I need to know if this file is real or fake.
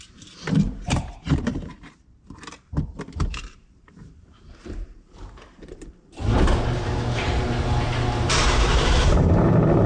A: fake